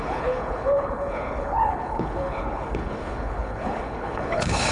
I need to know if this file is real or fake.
fake